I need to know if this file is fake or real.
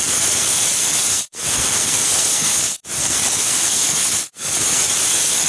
fake